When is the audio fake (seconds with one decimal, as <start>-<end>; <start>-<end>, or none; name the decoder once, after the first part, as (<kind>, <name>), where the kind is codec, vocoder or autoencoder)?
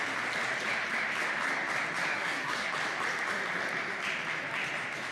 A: 2.1-2.7 (codec, SNAC)